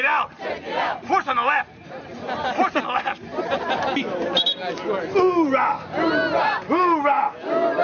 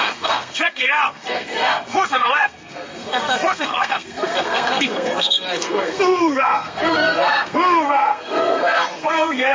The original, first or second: first